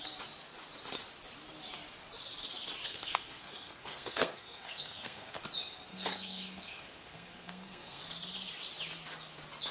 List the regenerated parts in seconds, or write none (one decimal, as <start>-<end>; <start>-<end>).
2.9-5.4; 5.9-8.0